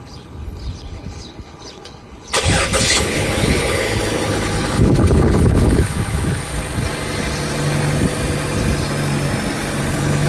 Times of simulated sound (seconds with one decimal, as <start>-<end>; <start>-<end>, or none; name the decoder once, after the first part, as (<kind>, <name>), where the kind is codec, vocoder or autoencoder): 0.0-6.5 (codec, HILCodec); 9.9-10.3